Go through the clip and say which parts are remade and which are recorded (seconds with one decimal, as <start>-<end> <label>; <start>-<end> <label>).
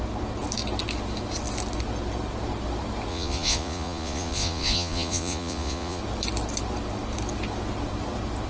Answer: 0.0-3.1 recorded; 3.1-6.0 remade; 6.0-8.5 recorded